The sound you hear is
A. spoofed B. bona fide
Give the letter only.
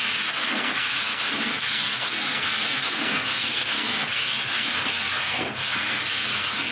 A